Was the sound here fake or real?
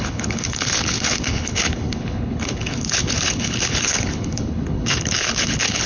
fake